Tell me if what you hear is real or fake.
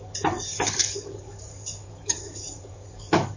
fake